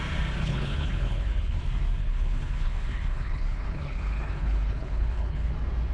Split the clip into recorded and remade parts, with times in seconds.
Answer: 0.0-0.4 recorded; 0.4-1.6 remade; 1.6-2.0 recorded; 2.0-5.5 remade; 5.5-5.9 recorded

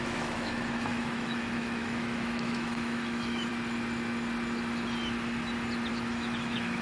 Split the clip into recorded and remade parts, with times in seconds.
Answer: 0.0-3.5 remade; 3.5-5.9 recorded; 5.9-6.8 remade

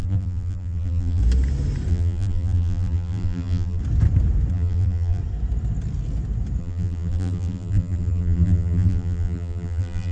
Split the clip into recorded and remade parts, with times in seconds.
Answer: 0.0-1.2 remade; 1.2-1.9 recorded; 1.9-3.8 remade; 3.8-4.5 recorded; 4.5-5.2 remade; 5.2-6.6 recorded; 6.6-10.1 remade

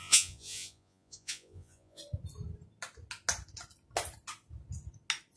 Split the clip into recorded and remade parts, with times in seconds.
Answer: 0.0-2.0 remade; 2.0-5.4 recorded

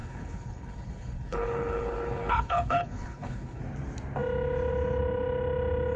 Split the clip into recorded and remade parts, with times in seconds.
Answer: 0.0-3.6 remade; 3.6-6.0 recorded

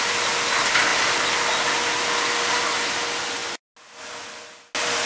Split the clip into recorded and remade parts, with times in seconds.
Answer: 0.0-5.1 recorded

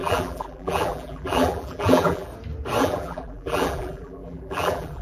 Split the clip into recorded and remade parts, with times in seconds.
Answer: 0.0-2.3 remade; 2.3-2.8 recorded; 2.8-5.0 remade